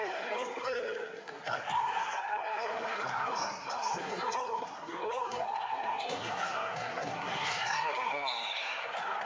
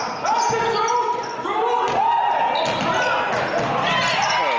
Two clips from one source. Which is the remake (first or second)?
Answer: first